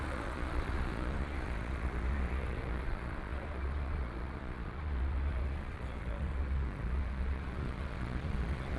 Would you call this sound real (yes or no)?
no